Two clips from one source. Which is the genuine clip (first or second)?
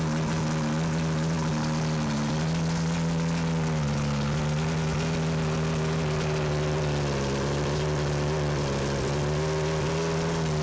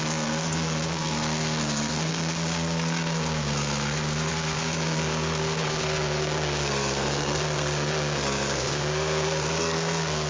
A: first